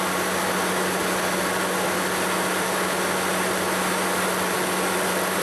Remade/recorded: recorded